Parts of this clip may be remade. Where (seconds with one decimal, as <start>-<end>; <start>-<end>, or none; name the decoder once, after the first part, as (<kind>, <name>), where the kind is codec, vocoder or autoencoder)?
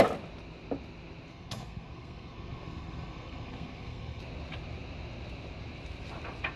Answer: 1.3-4.2 (codec, SNAC)